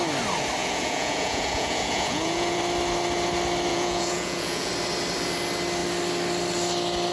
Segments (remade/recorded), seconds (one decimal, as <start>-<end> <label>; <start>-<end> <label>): 0.0-0.6 recorded; 0.6-2.6 remade; 2.6-3.7 recorded; 3.7-4.7 remade; 4.7-7.1 recorded